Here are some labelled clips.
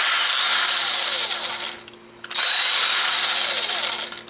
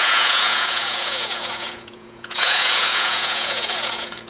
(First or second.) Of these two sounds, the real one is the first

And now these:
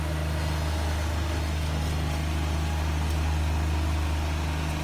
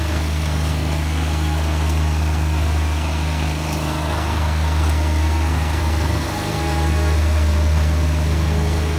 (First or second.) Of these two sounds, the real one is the first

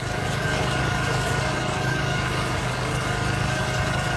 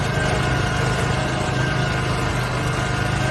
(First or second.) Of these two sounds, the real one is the second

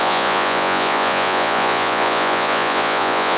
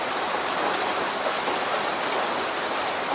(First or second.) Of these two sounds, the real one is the second